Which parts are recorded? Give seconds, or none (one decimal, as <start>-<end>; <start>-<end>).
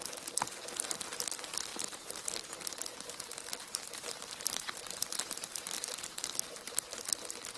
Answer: 0.0-1.7; 2.2-3.6; 7.0-7.6